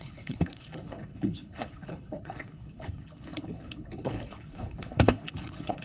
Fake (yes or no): yes